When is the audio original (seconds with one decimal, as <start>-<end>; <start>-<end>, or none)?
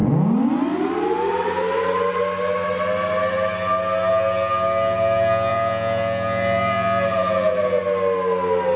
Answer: 0.0-5.5; 7.8-8.8